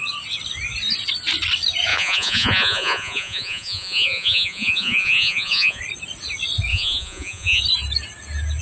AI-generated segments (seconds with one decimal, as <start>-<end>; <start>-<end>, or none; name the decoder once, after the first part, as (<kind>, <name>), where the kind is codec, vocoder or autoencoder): 1.9-5.8 (vocoder, Vocos); 6.7-7.6